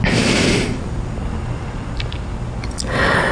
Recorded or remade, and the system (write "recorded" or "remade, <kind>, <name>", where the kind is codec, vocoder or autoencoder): recorded